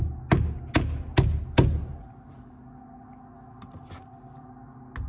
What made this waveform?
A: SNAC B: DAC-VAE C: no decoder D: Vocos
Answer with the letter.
C